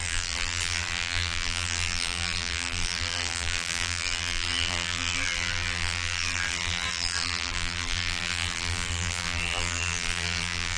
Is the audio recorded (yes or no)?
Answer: no